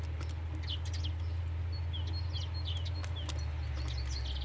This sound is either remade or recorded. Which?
recorded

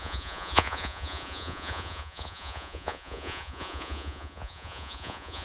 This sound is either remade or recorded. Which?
remade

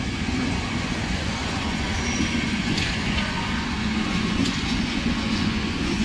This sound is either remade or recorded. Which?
remade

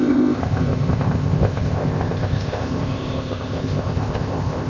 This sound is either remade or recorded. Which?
remade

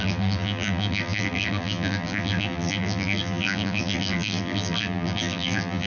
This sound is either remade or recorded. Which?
remade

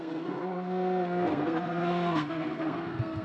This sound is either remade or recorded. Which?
remade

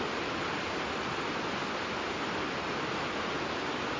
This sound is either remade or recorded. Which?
recorded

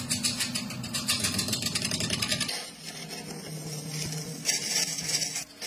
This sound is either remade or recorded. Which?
recorded